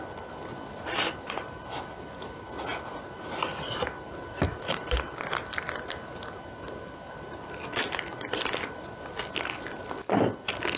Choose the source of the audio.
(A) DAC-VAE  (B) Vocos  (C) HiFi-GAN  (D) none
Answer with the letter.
D